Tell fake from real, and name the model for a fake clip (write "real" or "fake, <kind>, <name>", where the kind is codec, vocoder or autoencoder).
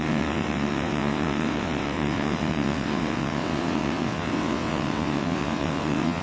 fake, vocoder, WaveNeXt